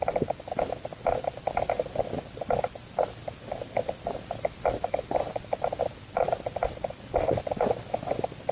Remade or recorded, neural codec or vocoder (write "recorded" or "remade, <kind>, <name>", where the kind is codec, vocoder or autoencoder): recorded